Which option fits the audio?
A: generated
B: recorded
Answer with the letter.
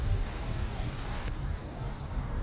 A